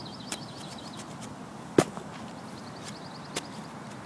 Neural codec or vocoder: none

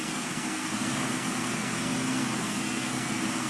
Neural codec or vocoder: codec, SNAC